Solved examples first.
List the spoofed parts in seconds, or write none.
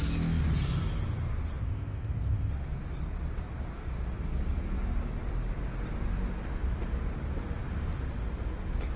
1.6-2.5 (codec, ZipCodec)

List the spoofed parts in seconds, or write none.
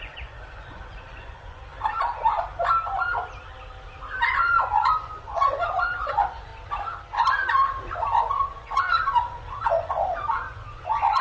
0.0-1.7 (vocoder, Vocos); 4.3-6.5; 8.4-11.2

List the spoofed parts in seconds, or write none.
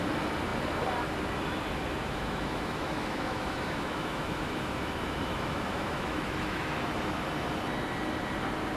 2.0-6.9 (autoencoder, DAC-VAE)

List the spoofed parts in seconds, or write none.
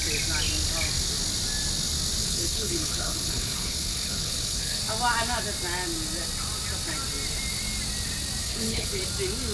2.2-4.8 (codec, HILCodec); 8.4-9.0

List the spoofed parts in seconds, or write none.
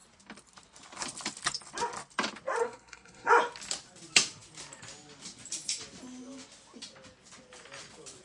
2.6-3.3 (codec, SNAC)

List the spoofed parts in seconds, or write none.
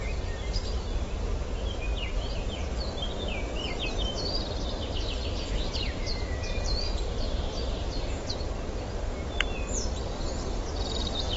0.0-1.3 (vocoder, BigVGAN v2); 2.2-11.4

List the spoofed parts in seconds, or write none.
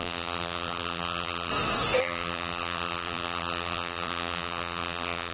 0.0-1.5 (vocoder, BigVGAN v2); 2.0-5.3